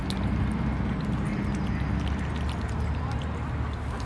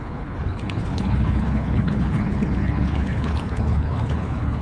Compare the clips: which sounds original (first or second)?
first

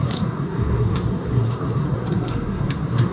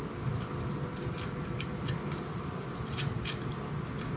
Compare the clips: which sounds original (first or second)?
second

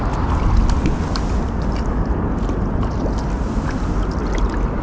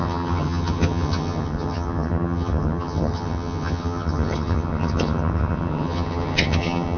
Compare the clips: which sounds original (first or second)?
first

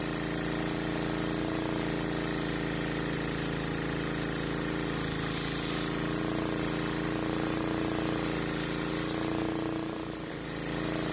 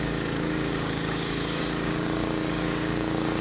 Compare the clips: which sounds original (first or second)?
first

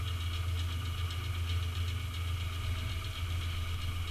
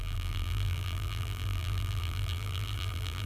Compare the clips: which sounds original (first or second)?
first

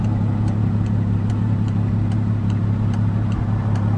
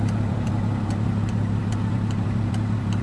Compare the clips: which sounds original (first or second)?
first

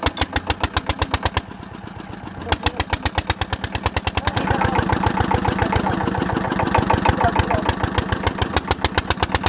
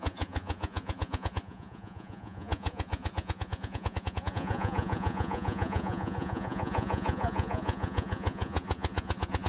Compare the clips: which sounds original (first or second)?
first